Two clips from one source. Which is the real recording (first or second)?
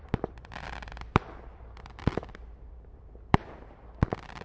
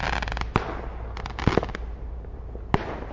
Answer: second